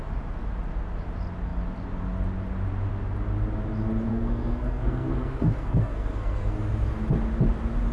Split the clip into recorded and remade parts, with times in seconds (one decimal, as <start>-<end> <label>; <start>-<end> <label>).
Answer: 0.0-4.1 recorded; 4.1-6.6 remade; 6.6-7.9 recorded